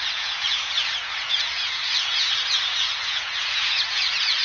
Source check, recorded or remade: remade